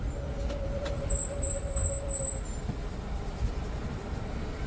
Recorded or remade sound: remade